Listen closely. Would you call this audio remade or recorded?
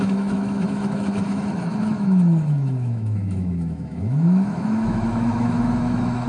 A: remade